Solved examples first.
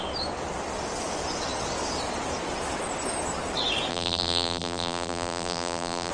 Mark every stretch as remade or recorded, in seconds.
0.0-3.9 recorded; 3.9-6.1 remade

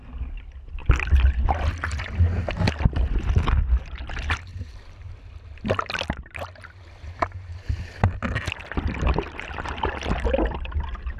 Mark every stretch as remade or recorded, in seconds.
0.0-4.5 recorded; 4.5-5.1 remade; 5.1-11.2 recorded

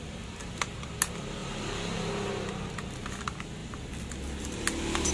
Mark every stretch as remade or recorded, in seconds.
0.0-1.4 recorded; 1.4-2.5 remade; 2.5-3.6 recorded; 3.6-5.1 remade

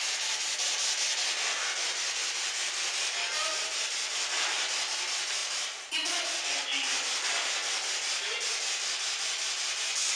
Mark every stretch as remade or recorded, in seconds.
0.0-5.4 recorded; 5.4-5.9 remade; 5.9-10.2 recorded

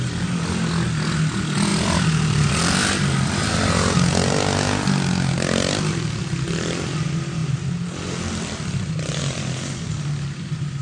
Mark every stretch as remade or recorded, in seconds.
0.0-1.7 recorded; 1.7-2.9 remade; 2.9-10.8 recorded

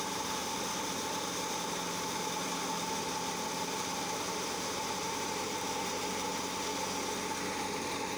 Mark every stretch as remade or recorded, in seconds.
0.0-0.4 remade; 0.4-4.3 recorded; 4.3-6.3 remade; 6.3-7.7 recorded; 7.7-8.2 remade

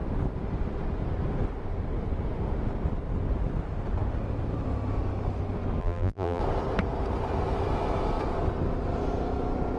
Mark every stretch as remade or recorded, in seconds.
0.0-5.8 recorded; 5.8-6.4 remade; 6.4-9.8 recorded

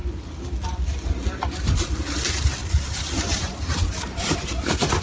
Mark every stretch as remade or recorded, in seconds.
0.0-2.6 recorded; 2.6-4.5 remade; 4.5-5.0 recorded